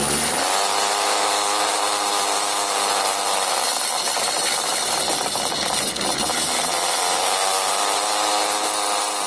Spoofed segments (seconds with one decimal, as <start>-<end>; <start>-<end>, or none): none